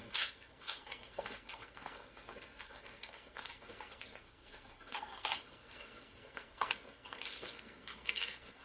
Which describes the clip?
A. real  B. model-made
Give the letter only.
B